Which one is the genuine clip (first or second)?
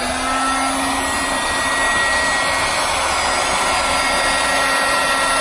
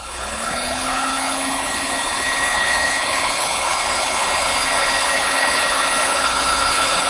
first